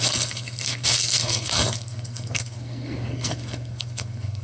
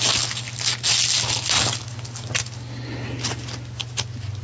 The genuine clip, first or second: second